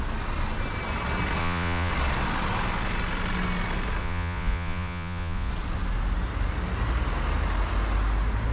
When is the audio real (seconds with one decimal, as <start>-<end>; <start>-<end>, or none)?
0.0-1.4; 1.9-4.0; 5.5-8.5